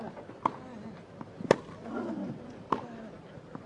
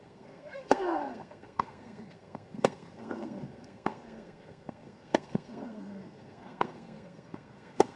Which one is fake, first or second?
second